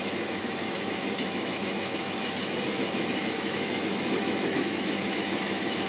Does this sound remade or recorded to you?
remade